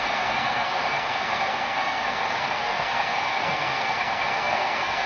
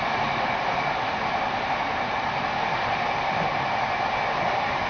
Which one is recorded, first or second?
second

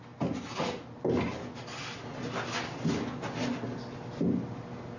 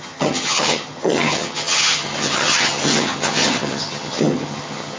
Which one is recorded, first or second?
first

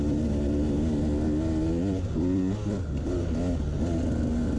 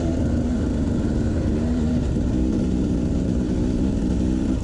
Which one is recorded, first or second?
first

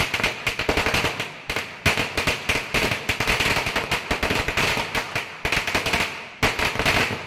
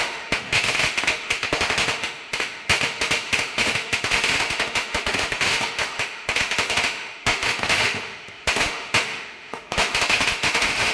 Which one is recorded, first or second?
first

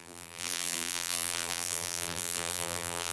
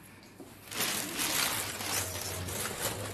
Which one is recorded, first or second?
second